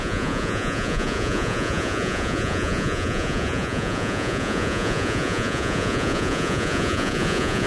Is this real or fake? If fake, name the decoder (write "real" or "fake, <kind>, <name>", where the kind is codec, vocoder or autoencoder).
fake, vocoder, Vocos